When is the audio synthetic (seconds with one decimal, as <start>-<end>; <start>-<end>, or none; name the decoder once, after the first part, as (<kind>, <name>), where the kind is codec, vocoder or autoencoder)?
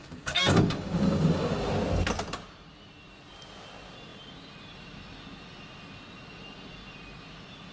0.0-1.7 (codec, DAC)